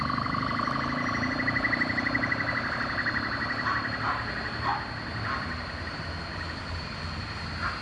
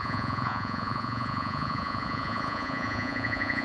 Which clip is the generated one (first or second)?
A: second